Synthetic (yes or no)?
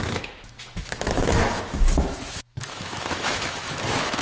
yes